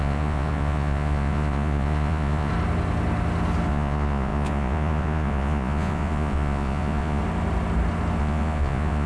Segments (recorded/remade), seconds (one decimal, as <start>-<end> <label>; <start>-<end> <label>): 0.0-2.5 remade; 2.5-3.7 recorded; 3.7-7.2 remade; 7.2-8.2 recorded; 8.2-9.1 remade